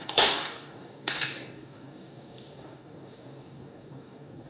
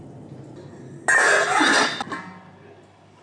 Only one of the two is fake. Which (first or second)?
first